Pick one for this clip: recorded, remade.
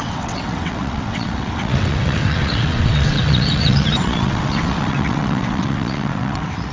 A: remade